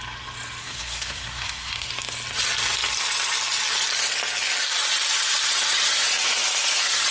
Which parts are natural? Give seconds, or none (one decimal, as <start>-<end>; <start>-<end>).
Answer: 0.0-0.6; 1.9-7.1